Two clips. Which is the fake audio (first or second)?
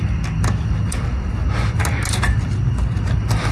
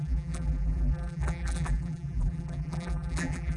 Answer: second